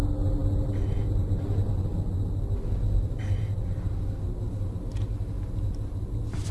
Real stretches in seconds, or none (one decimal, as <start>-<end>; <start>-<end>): 0.0-6.5